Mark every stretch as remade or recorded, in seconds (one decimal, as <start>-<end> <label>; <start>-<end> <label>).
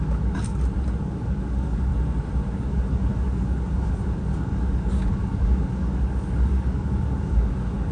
0.0-0.5 remade; 0.5-1.0 recorded; 1.0-1.9 remade; 1.9-2.5 recorded; 2.5-7.9 remade